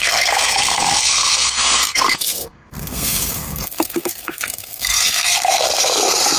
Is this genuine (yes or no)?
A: no